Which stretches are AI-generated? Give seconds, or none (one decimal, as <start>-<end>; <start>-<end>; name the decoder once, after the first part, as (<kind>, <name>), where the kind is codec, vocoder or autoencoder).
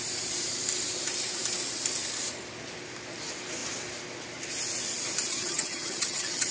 5.3-6.5 (vocoder, HiFi-GAN)